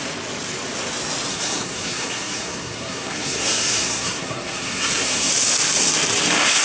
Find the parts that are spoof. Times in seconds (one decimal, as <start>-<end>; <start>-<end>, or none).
1.3-5.3